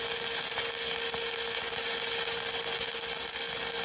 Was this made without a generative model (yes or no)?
yes